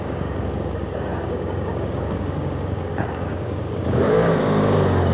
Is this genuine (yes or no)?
no